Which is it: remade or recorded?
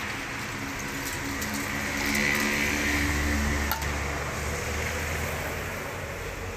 recorded